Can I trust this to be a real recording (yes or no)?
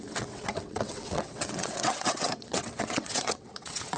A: no